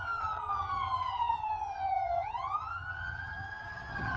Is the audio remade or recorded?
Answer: remade